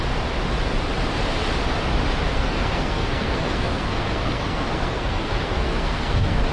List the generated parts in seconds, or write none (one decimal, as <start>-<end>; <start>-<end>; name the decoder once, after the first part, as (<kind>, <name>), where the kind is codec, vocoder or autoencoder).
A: 2.3-6.5 (codec, SNAC)